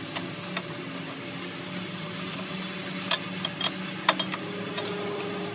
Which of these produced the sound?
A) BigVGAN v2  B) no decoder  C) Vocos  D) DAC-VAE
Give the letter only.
B